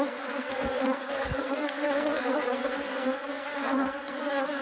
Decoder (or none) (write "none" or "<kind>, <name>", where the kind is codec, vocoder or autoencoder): codec, SNAC